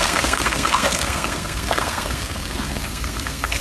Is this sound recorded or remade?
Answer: remade